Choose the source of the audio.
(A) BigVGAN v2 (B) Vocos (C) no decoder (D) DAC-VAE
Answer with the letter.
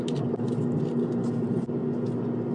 C